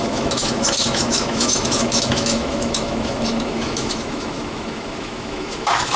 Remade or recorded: remade